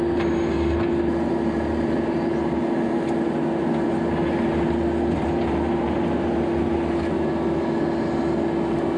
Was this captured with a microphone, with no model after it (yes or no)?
yes